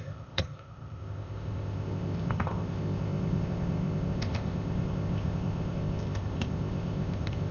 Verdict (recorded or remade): remade